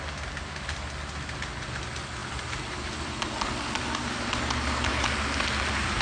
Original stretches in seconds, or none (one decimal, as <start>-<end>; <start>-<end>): 0.0-2.2; 4.4-6.0